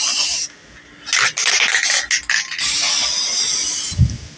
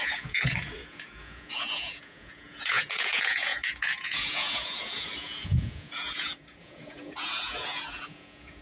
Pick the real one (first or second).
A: first